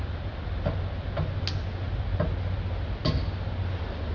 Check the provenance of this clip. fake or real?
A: real